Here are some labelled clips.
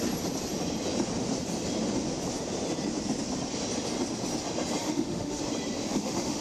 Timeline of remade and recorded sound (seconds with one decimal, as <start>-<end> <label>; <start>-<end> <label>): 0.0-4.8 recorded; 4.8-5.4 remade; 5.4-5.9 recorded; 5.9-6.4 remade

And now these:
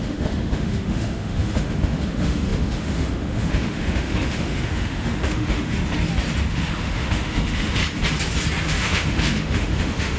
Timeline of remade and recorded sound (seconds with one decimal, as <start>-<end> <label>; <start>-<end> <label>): 0.0-5.8 remade; 5.8-6.5 recorded; 6.5-7.8 remade; 7.8-8.6 recorded; 8.6-10.2 remade

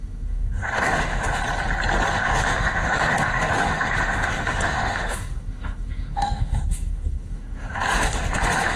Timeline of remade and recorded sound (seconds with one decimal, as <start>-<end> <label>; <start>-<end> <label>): 0.0-1.4 remade; 1.4-2.1 recorded; 2.1-8.8 remade

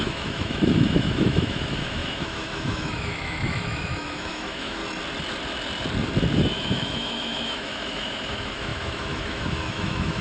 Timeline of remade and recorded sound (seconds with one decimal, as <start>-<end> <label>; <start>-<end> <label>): 0.0-4.8 remade; 4.8-6.4 recorded; 6.4-10.2 remade

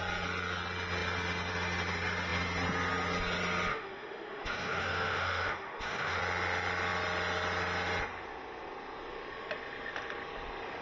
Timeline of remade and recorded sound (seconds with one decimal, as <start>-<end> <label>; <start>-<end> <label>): 0.0-3.7 recorded; 3.7-6.2 remade; 6.2-10.8 recorded

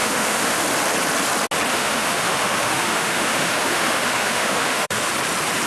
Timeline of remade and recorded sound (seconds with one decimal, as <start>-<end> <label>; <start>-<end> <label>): 0.0-0.6 remade; 0.6-1.7 recorded; 1.7-5.1 remade; 5.1-5.7 recorded